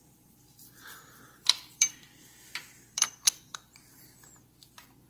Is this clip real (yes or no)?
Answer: no